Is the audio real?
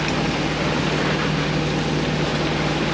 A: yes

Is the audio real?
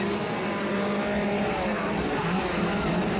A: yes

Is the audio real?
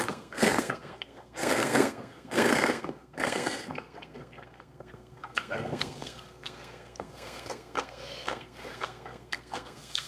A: no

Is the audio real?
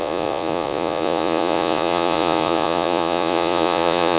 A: no